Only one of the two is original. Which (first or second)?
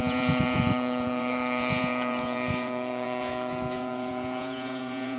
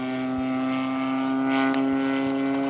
second